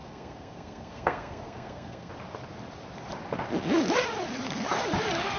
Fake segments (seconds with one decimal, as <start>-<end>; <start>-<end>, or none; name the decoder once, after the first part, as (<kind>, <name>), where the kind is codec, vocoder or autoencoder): 0.0-2.1 (codec, SNAC)